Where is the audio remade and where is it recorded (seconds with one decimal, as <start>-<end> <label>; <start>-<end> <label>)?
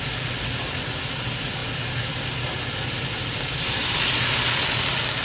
0.0-5.2 recorded